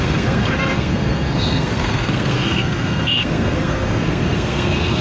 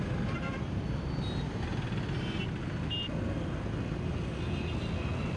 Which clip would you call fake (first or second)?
first